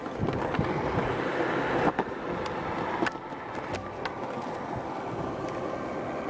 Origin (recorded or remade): recorded